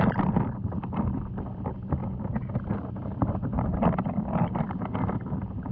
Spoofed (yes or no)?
no